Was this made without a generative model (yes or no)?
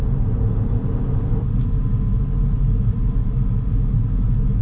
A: yes